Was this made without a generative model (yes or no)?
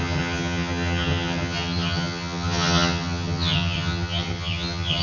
no